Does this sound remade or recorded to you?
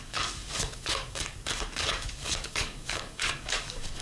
remade